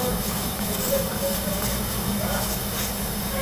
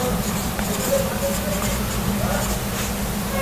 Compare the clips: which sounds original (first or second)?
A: second